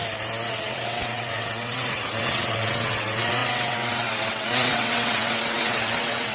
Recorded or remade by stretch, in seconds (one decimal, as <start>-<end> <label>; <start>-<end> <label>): 0.0-0.5 recorded; 0.5-6.3 remade